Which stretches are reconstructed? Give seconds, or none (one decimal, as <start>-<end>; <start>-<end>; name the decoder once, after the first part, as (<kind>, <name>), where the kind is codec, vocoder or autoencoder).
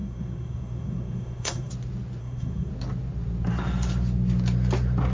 0.0-1.7 (codec, SNAC); 2.2-2.7